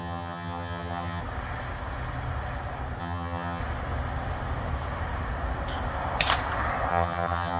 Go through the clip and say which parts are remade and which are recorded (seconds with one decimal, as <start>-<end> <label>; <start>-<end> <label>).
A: 0.0-1.2 remade; 1.2-3.0 recorded; 3.0-3.6 remade; 3.6-6.9 recorded; 6.9-7.6 remade

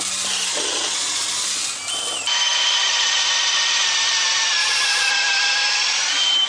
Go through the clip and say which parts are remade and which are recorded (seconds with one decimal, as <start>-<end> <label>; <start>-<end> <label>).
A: 0.0-0.5 recorded; 0.5-1.2 remade; 1.2-4.6 recorded; 4.6-5.1 remade; 5.1-6.5 recorded

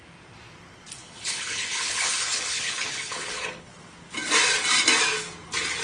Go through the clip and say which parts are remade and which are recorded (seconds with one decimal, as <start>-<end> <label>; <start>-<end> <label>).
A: 0.0-1.0 recorded; 1.0-3.7 remade; 3.7-5.8 recorded